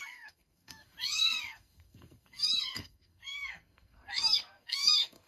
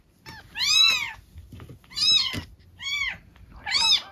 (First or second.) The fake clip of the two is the first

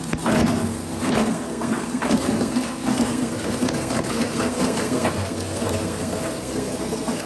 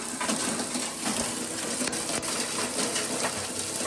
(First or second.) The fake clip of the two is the first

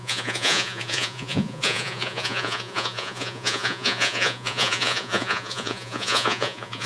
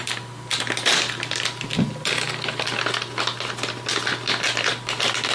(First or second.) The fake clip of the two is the first